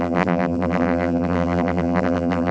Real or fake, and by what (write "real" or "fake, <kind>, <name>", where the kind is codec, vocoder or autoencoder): fake, vocoder, BigVGAN v2